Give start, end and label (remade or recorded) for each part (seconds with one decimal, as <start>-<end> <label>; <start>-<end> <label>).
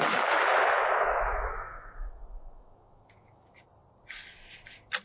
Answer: 0.0-0.5 recorded; 0.5-3.5 remade; 3.5-5.0 recorded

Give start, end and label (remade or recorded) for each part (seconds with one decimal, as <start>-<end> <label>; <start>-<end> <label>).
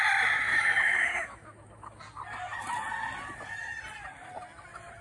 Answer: 0.0-0.5 recorded; 0.5-2.0 remade; 2.0-5.0 recorded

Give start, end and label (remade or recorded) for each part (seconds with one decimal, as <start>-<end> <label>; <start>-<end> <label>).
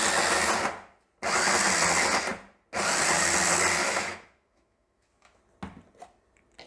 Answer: 0.0-3.8 recorded; 3.8-5.4 remade; 5.4-6.7 recorded